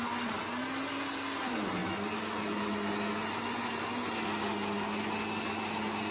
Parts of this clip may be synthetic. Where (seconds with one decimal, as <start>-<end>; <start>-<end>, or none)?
none